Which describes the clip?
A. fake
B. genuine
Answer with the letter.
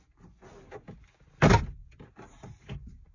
B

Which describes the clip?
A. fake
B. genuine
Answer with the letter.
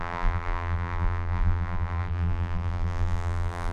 A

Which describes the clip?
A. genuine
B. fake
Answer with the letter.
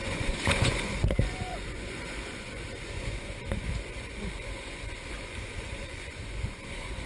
B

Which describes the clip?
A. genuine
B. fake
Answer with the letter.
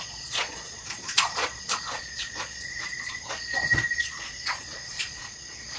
B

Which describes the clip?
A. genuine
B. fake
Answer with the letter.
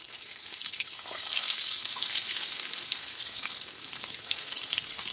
B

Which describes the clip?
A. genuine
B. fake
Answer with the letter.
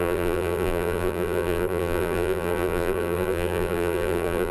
B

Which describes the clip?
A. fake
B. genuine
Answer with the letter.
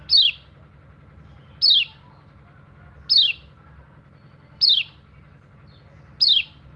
B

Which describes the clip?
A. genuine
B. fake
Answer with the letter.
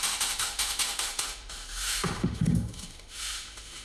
B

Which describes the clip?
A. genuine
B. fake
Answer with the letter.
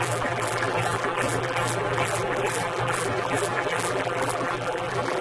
B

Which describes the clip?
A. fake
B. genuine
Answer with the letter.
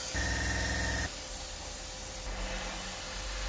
B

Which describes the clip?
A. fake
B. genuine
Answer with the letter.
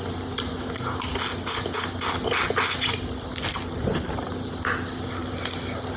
B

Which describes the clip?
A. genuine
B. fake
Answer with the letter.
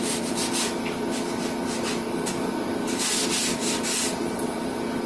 A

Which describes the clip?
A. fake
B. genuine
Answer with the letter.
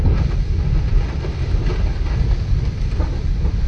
B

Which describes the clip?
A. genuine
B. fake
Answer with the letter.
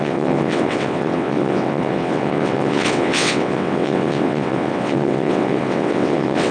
B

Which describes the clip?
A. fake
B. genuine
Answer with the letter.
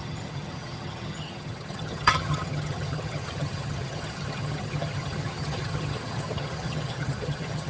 A